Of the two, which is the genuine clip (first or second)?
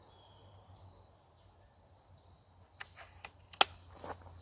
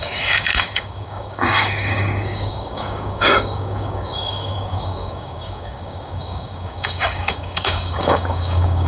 first